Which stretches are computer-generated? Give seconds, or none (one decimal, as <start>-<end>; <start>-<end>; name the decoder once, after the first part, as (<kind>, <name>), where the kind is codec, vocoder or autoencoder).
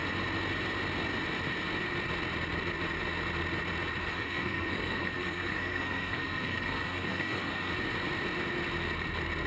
4.0-7.7 (codec, SNAC)